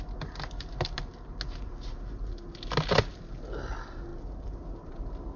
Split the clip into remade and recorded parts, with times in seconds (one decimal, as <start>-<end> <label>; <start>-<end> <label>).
0.0-4.1 recorded; 4.1-4.9 remade; 4.9-5.4 recorded